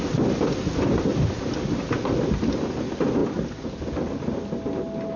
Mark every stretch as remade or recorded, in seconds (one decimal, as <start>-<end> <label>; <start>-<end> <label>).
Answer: 0.0-5.2 recorded